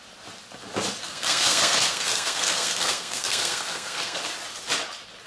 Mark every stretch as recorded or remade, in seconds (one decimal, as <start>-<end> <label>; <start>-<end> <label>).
0.0-1.0 recorded; 1.0-4.2 remade; 4.2-5.3 recorded